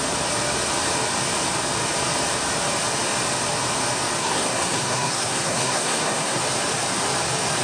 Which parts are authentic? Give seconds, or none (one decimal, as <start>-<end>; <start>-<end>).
0.0-4.2; 6.4-7.6